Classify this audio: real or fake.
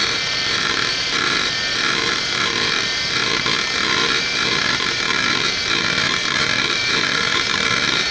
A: fake